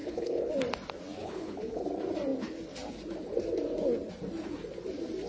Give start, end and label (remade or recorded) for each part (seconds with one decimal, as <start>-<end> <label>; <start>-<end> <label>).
0.0-0.5 remade; 0.5-1.2 recorded; 1.2-1.8 remade; 1.8-5.3 recorded